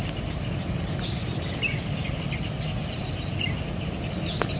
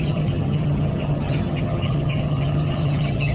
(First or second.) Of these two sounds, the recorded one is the first